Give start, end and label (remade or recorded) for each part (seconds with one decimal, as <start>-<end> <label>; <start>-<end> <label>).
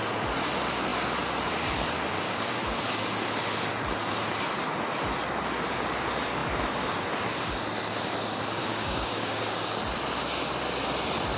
0.0-8.6 recorded; 8.6-9.8 remade; 9.8-11.4 recorded